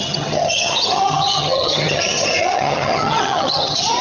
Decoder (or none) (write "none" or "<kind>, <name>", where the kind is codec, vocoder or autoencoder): vocoder, HiFi-GAN